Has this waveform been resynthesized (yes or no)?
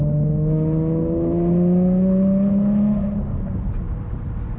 no